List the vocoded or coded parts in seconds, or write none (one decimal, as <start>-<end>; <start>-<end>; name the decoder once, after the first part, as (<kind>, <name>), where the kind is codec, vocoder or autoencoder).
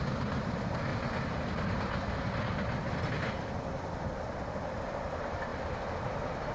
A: 0.9-4.8 (vocoder, BigVGAN v2); 5.5-6.5